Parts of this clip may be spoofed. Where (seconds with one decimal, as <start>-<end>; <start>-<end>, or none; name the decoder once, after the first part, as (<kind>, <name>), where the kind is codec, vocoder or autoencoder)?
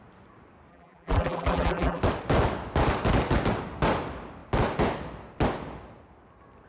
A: 0.7-2.0 (vocoder, BigVGAN v2)